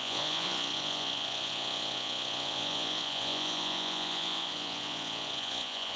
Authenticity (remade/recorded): remade